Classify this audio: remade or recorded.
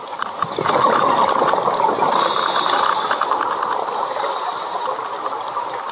recorded